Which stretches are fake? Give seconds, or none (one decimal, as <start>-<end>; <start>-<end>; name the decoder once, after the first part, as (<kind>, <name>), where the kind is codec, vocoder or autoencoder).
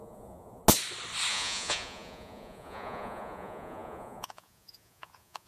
0.0-0.6 (vocoder, Vocos); 1.3-5.5